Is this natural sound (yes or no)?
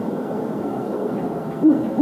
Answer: no